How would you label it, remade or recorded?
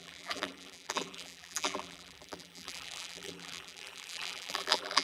remade